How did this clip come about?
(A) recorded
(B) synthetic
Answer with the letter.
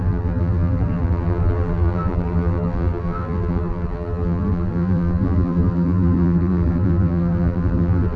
B